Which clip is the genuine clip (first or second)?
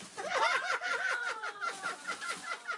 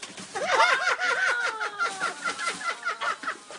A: second